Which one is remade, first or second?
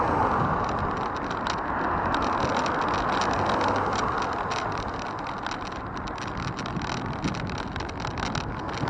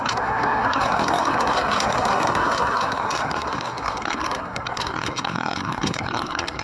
second